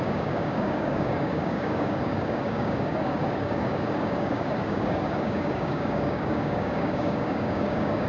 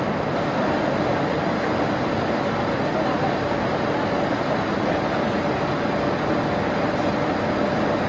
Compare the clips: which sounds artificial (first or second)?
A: first